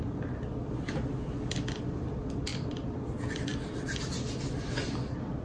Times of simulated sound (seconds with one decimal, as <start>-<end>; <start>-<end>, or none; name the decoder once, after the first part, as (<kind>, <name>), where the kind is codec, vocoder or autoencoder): 2.5-3.0 (vocoder, BigVGAN v2)